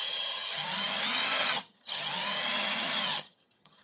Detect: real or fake fake